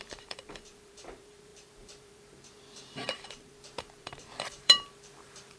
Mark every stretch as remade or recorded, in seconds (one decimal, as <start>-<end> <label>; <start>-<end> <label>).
0.0-5.6 remade